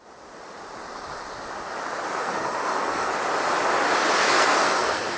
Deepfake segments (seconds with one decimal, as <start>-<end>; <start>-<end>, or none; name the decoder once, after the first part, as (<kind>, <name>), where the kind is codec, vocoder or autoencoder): 2.2-3.1 (codec, SNAC); 4.2-5.2